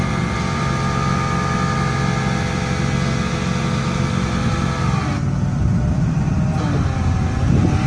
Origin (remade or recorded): recorded